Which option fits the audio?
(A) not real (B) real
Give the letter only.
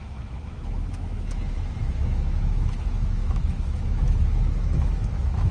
A